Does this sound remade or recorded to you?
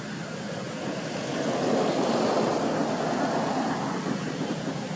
recorded